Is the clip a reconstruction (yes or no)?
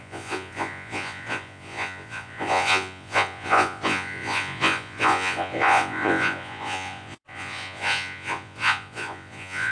yes